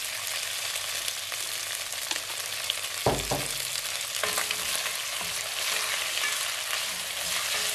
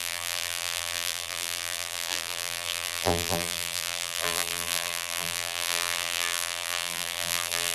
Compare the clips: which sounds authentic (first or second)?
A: first